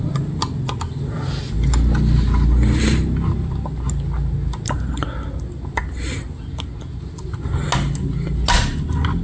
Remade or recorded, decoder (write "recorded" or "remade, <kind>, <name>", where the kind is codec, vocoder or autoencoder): recorded